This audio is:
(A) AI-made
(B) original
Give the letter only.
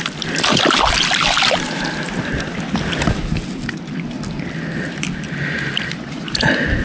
B